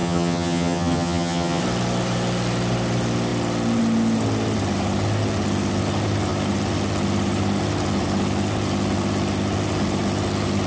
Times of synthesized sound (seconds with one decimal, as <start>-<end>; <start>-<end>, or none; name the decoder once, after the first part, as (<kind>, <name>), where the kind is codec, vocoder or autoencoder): 0.0-1.6 (vocoder, HiFi-GAN)